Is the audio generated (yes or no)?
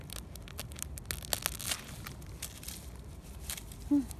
no